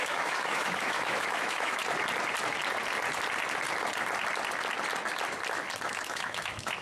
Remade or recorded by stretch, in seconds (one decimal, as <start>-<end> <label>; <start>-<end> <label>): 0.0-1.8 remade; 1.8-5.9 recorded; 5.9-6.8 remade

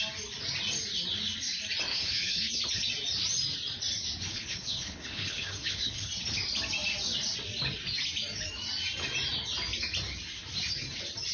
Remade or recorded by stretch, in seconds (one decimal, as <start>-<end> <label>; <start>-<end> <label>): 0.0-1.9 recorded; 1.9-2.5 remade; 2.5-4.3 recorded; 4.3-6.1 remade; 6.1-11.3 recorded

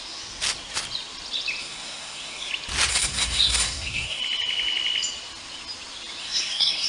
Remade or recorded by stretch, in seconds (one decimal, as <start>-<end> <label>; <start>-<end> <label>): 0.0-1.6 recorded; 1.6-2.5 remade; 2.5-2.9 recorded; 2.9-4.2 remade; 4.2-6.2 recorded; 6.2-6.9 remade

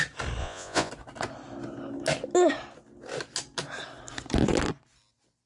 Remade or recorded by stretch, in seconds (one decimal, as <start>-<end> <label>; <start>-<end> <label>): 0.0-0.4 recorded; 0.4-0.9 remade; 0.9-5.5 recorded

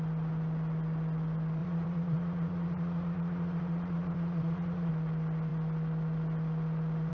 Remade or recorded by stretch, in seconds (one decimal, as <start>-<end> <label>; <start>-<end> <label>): 0.0-1.6 recorded; 1.6-4.9 remade; 4.9-7.1 recorded

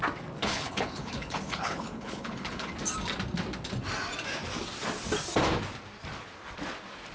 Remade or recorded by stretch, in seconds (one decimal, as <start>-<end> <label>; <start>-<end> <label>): 0.0-0.4 recorded; 0.4-2.7 remade; 2.7-7.1 recorded